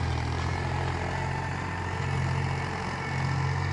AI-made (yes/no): no